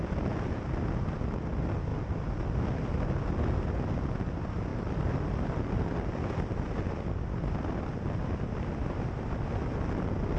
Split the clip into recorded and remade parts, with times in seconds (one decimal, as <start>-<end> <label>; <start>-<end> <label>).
0.0-4.7 recorded; 4.7-7.8 remade; 7.8-10.4 recorded